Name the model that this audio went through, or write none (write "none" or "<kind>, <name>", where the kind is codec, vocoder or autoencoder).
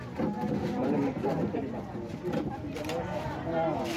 none